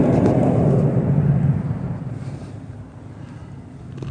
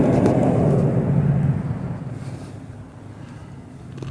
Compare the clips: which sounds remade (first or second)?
first